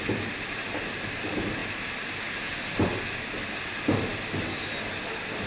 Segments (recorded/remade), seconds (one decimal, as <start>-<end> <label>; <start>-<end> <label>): 0.0-5.5 recorded